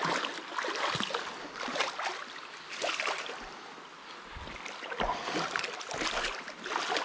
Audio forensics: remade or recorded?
recorded